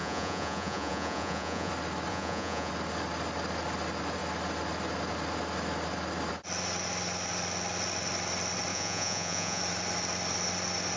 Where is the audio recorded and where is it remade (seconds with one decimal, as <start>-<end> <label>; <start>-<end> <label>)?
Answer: 0.0-1.7 remade; 1.7-2.1 recorded; 2.1-2.7 remade; 2.7-8.7 recorded; 8.7-9.6 remade; 9.6-11.0 recorded